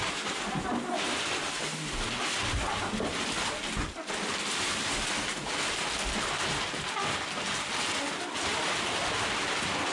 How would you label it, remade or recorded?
recorded